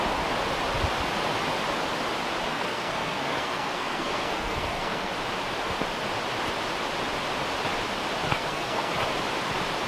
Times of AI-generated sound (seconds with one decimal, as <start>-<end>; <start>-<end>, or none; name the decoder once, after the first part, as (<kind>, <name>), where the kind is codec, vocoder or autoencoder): 2.5-5.1 (codec, SNAC); 8.3-8.9